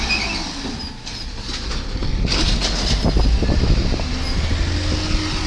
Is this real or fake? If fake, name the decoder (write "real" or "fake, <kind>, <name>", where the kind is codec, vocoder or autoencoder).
real